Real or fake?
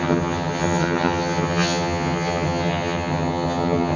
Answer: fake